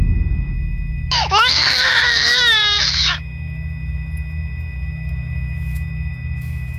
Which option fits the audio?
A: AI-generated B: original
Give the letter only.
A